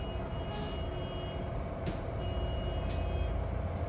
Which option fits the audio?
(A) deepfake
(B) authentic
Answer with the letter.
B